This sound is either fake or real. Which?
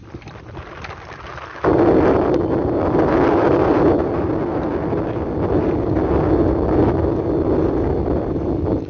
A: real